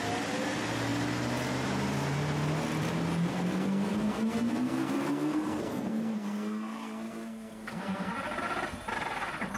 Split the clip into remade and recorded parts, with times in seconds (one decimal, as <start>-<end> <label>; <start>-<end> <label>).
0.0-3.3 recorded; 3.3-8.1 remade; 8.1-9.6 recorded